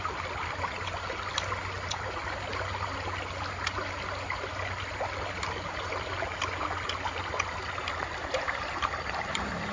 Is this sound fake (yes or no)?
no